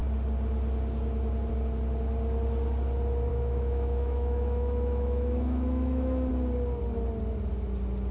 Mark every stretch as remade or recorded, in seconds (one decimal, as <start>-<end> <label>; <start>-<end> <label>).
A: 0.0-3.3 recorded; 3.3-6.3 remade; 6.3-8.1 recorded